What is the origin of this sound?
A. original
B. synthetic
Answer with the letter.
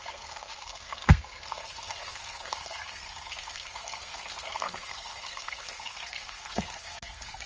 B